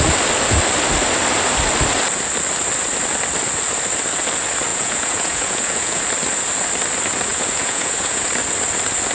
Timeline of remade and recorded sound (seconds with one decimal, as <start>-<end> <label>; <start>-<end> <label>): 0.0-4.7 recorded; 4.7-6.0 remade; 6.0-7.3 recorded; 7.3-8.3 remade; 8.3-9.1 recorded